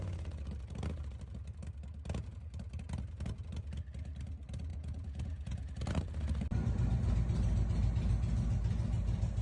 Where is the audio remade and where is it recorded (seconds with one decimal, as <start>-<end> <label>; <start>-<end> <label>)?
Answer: 0.0-4.7 recorded; 4.7-5.7 remade; 5.7-9.4 recorded